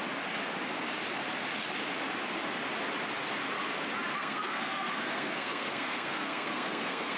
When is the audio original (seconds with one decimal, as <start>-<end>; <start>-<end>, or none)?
0.0-4.2